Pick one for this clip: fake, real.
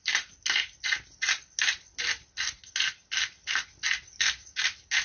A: real